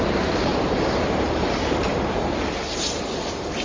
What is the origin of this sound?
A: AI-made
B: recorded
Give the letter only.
A